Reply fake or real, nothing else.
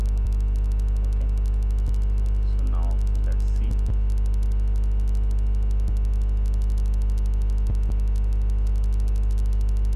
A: real